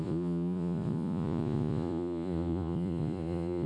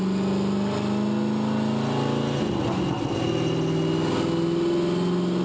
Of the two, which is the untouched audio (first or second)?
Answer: second